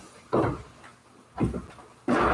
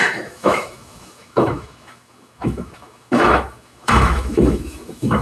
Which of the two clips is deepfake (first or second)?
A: second